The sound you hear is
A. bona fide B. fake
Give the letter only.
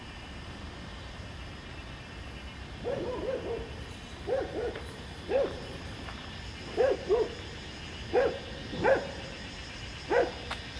B